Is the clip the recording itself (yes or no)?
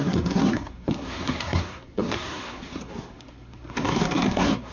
no